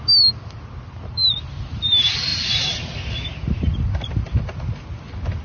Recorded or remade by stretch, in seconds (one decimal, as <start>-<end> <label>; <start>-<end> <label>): 0.0-5.4 recorded